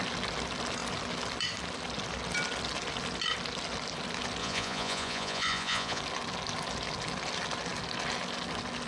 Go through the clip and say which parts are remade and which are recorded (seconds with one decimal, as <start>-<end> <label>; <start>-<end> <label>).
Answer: 0.0-4.4 recorded; 4.4-6.0 remade; 6.0-8.9 recorded